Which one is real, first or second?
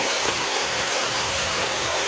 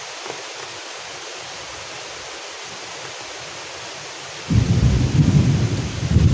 second